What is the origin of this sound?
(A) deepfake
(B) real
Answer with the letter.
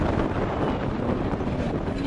B